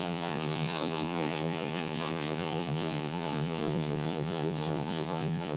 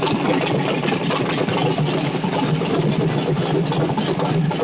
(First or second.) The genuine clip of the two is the second